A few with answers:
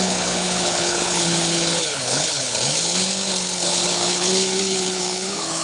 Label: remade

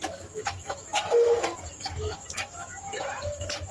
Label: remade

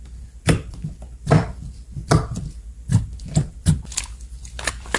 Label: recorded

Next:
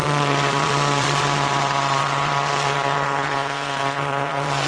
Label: remade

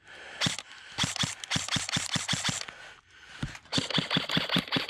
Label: recorded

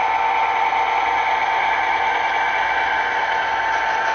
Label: recorded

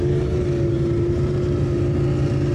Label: recorded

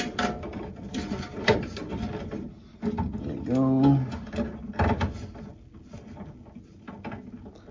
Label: recorded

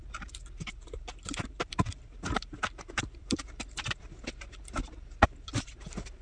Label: remade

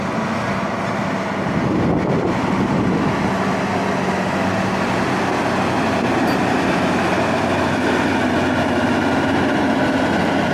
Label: recorded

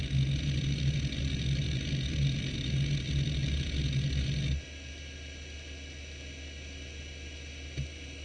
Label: recorded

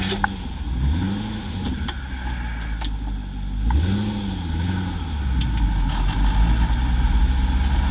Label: recorded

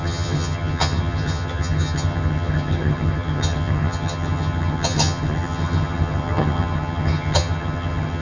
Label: remade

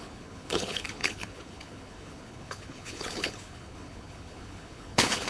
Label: remade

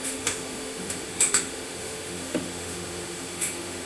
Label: remade